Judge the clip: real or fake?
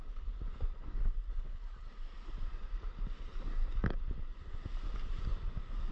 real